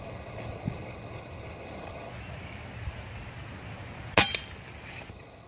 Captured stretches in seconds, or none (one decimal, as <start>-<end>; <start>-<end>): 2.1-5.1